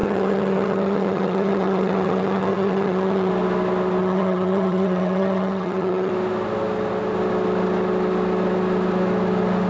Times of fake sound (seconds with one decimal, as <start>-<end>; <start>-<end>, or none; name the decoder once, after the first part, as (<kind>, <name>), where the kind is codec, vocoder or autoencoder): 0.0-3.3 (vocoder, HiFi-GAN); 4.0-6.1